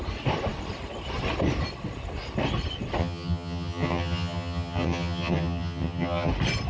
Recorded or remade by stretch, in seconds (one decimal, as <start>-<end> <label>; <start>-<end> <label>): 0.0-3.0 recorded; 3.0-6.3 remade; 6.3-6.7 recorded